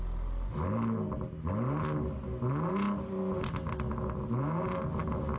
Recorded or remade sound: recorded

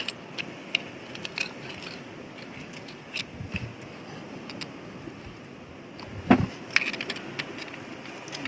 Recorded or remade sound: recorded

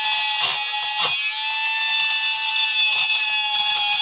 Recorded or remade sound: recorded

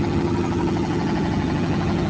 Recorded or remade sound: remade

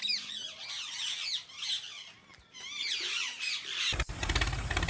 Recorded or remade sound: recorded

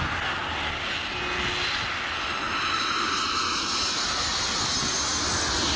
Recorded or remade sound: recorded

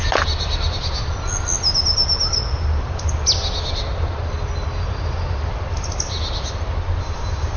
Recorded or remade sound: recorded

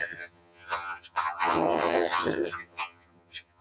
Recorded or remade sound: remade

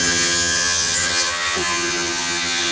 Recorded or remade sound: remade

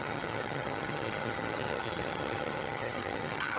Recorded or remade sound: remade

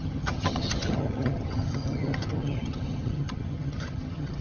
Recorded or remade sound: remade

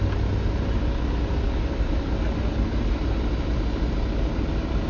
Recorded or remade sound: recorded